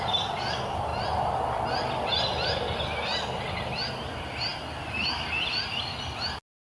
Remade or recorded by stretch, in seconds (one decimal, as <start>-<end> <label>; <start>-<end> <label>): 0.0-6.7 recorded